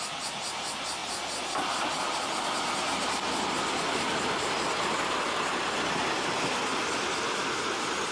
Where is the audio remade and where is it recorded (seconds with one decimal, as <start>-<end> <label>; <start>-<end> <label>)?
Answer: 0.0-6.0 recorded; 6.0-7.4 remade; 7.4-8.1 recorded